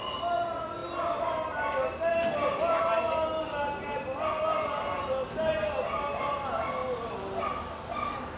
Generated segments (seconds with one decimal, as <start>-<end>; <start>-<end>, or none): 6.8-7.4